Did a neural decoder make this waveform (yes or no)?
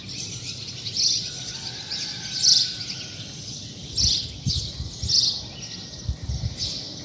no